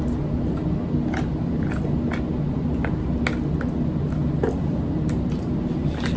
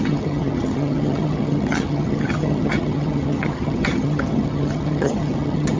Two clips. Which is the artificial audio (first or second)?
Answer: second